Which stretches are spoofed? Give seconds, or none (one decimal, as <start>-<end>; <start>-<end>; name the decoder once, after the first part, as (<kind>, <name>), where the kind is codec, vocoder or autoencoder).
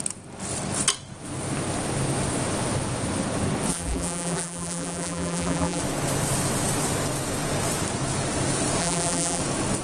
3.7-5.8 (vocoder, BigVGAN v2); 8.8-9.4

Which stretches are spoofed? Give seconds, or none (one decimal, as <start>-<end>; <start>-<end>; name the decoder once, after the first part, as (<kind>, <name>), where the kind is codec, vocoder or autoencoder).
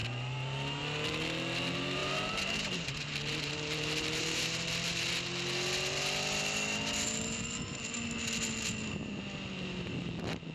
2.0-4.7 (vocoder, BigVGAN v2)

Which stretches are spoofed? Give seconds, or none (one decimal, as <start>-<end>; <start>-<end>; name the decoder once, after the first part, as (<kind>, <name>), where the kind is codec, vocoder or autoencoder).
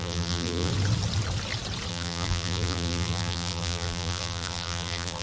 0.0-0.7 (vocoder, BigVGAN v2); 1.9-5.2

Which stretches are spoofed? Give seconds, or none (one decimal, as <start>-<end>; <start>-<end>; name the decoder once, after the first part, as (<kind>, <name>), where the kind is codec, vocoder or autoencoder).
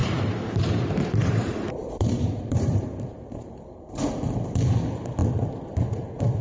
0.0-3.8 (vocoder, BigVGAN v2)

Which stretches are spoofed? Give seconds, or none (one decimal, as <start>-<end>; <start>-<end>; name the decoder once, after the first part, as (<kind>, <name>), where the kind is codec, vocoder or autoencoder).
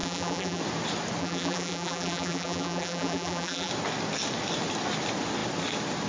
0.0-0.6 (vocoder, BigVGAN v2); 1.2-3.7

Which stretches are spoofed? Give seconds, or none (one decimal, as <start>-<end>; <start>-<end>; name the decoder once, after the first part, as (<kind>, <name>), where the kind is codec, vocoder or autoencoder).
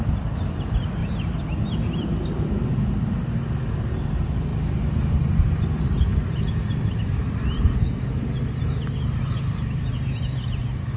0.0-1.0 (vocoder, BigVGAN v2); 1.7-2.1; 3.0-4.5; 5.3-11.0